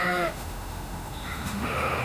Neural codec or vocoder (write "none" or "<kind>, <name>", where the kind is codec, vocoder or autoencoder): autoencoder, DAC-VAE